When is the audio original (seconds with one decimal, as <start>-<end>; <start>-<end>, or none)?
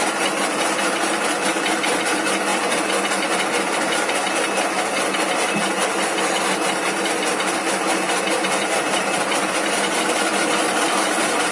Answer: 0.0-11.5